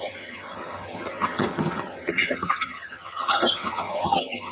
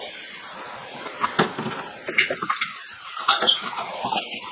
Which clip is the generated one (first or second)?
first